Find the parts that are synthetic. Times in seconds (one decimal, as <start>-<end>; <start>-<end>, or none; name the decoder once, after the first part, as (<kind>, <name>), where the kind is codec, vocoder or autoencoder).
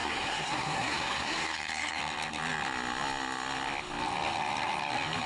0.0-2.0 (codec, SNAC)